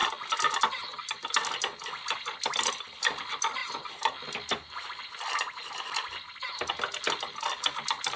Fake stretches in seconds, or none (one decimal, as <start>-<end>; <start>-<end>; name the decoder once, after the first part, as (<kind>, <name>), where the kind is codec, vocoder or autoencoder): none